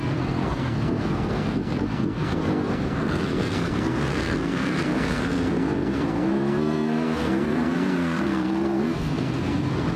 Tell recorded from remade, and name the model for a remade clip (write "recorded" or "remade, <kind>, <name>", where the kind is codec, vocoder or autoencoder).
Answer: remade, codec, SNAC